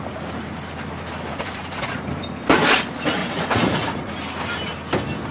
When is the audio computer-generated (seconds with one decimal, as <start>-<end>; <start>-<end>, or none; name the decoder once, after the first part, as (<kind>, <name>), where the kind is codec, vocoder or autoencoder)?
1.3-2.0 (vocoder, Vocos); 3.2-4.2